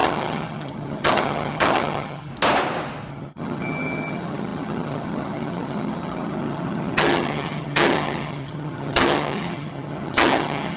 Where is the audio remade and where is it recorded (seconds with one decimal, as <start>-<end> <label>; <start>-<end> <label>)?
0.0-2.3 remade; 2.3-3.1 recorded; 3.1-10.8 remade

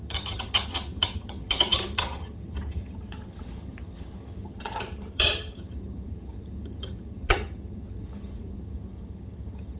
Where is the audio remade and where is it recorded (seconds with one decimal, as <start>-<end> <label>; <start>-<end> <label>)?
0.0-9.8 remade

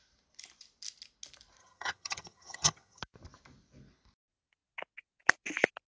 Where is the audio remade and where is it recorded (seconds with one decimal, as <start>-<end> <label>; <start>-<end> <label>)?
0.0-1.6 recorded; 1.6-3.0 remade; 3.0-5.9 recorded

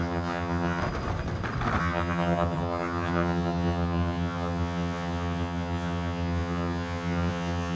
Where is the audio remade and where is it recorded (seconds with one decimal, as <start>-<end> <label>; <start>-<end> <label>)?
0.0-0.8 remade; 0.8-1.8 recorded; 1.8-7.8 remade

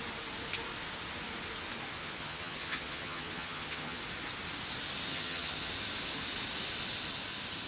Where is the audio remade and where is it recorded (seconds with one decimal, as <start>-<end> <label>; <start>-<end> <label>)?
0.0-2.0 recorded; 2.0-4.0 remade; 4.0-5.1 recorded; 5.1-5.7 remade; 5.7-7.7 recorded